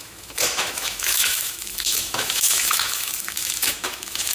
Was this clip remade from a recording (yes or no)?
yes